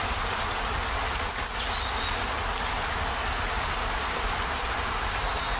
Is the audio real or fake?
real